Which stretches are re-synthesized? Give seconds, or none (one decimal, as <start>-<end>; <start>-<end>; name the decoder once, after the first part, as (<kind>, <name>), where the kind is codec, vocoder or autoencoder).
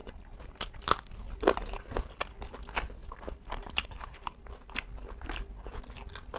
0.0-0.8 (vocoder, BigVGAN v2); 3.0-4.5